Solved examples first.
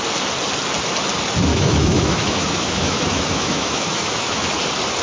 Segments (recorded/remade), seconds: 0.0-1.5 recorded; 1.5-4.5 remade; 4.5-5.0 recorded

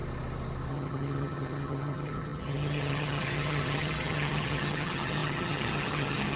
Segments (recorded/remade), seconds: 0.0-0.7 recorded; 0.7-6.4 remade

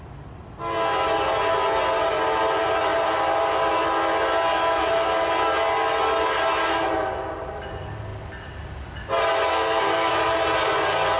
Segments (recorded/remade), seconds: 0.0-9.5 recorded; 9.5-10.1 remade; 10.1-11.2 recorded

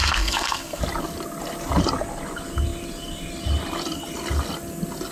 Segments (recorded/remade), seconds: 0.0-0.8 remade; 0.8-5.1 recorded

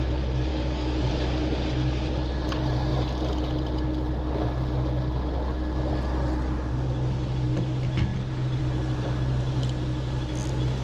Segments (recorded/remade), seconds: 0.0-0.5 recorded; 0.5-1.1 remade; 1.1-10.8 recorded

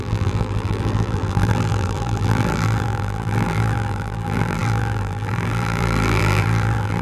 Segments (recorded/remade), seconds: 0.0-7.0 remade